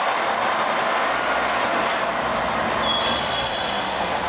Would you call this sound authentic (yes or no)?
yes